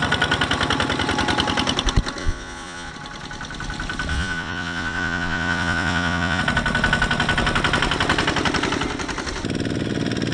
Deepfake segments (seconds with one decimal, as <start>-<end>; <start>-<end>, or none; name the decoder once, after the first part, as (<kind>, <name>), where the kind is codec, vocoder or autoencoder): 2.2-2.9 (vocoder, Vocos); 4.1-6.4